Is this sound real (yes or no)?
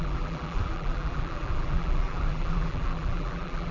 no